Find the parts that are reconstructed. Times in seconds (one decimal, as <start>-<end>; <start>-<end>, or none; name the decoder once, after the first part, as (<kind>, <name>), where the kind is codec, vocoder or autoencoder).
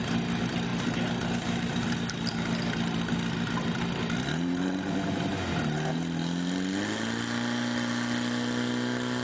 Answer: none